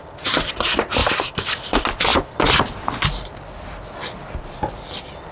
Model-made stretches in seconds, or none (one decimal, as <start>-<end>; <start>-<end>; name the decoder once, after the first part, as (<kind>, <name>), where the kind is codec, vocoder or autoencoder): none